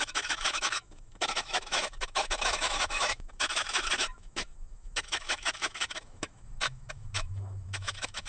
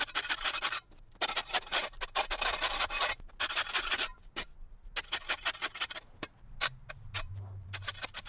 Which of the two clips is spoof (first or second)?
first